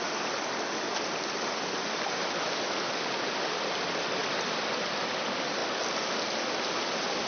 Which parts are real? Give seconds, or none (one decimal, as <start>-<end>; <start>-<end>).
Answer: 0.0-7.3